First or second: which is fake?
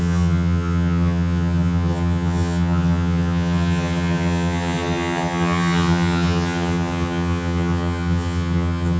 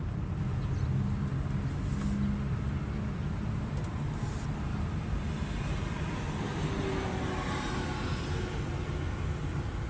first